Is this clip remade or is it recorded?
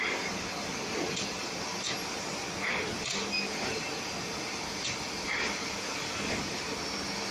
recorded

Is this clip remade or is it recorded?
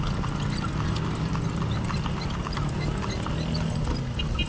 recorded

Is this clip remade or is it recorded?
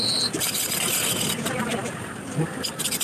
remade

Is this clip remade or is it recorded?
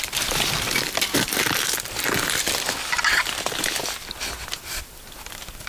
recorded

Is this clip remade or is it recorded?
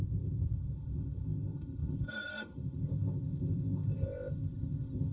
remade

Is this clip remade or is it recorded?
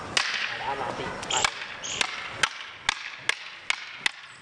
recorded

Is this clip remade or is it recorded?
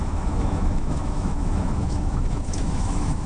remade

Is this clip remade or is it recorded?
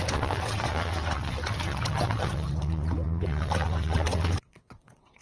remade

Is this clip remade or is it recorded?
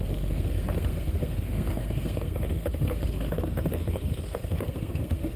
remade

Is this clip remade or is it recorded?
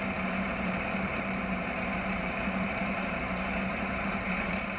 remade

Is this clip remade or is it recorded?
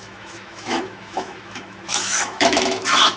remade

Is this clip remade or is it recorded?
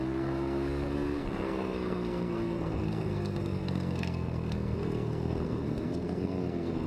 remade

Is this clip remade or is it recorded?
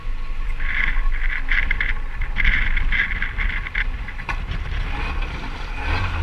recorded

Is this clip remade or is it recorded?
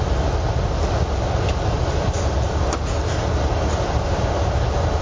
recorded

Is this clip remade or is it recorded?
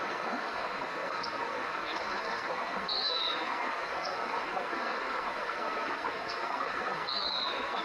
remade